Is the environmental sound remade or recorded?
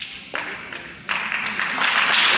recorded